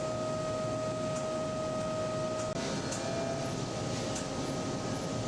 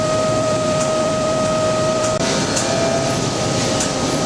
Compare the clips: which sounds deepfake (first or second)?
second